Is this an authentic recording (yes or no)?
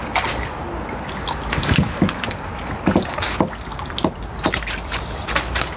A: yes